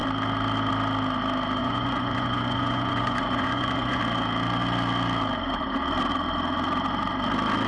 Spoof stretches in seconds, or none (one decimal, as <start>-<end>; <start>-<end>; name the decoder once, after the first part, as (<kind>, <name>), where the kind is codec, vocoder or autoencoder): 1.6-4.0 (vocoder, Vocos)